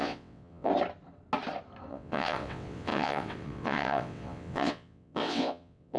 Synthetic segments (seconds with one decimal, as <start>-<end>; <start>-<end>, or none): 0.0-0.7; 1.9-6.0